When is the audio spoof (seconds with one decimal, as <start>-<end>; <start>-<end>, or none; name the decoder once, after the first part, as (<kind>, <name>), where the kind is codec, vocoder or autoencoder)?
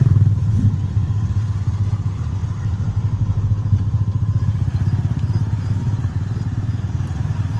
1.9-2.4 (vocoder, BigVGAN v2); 3.0-7.6